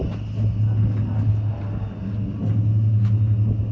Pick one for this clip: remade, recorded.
recorded